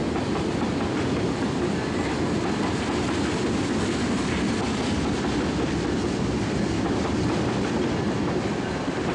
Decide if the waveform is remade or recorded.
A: recorded